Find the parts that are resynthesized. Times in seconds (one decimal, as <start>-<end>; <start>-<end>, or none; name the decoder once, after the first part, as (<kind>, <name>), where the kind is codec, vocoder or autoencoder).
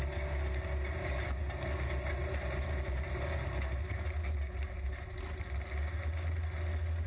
none